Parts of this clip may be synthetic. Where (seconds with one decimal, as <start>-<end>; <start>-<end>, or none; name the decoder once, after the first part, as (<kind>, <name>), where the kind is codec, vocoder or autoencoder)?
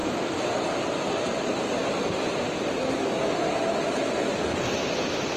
0.0-0.5 (autoencoder, DAC-VAE)